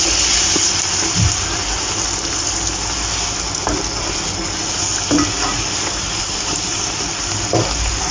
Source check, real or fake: real